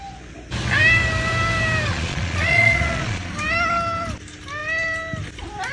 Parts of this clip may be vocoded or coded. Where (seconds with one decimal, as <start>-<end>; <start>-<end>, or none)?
1.9-3.3